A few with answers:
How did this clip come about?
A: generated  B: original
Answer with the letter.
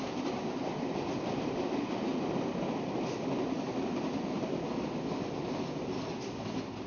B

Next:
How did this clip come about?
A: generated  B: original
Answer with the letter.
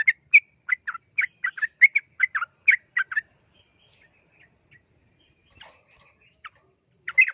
B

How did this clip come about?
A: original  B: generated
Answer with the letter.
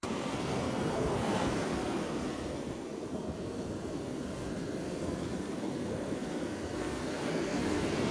B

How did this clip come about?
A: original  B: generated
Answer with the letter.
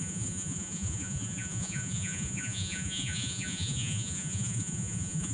B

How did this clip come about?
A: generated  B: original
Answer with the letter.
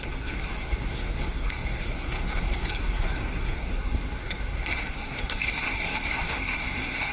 A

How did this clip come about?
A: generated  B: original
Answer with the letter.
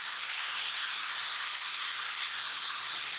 A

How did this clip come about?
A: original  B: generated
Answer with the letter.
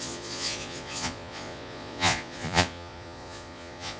B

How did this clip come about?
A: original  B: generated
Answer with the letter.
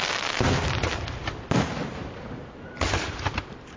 A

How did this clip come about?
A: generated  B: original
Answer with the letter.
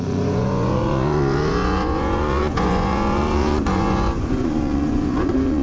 A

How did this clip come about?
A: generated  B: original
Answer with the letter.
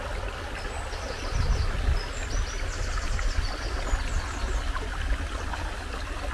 B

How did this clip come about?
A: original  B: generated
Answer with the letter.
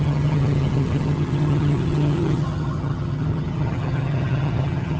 B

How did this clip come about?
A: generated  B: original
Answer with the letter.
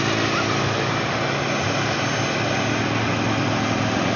B